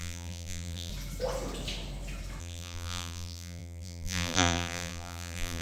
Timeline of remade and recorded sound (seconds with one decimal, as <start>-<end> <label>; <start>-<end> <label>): 0.0-0.9 remade; 0.9-2.4 recorded; 2.4-5.6 remade